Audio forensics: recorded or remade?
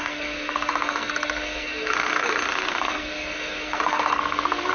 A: remade